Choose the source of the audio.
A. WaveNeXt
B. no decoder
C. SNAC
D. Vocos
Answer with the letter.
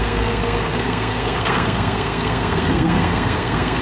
C